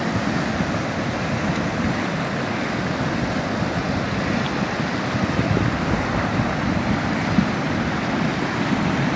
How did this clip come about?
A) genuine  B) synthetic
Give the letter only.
A